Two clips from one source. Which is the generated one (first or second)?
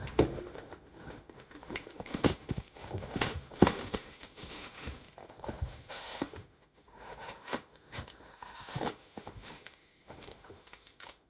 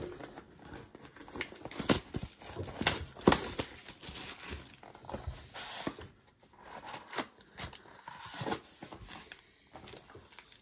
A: first